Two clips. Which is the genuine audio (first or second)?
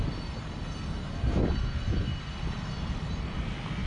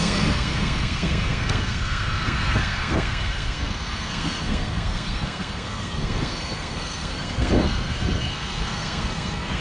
first